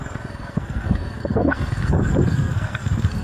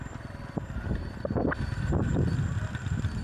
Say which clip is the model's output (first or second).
first